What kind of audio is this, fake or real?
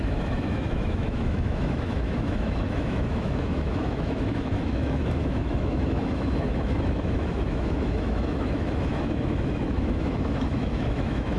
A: fake